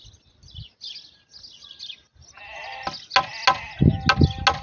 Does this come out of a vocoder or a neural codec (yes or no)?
no